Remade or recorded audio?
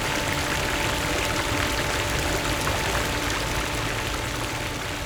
recorded